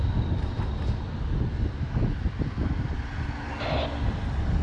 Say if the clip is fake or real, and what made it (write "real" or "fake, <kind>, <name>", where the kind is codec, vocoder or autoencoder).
real